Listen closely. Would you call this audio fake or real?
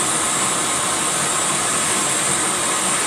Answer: real